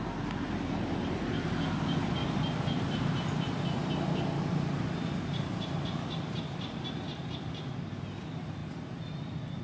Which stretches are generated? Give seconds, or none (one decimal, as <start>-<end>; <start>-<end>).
2.2-7.4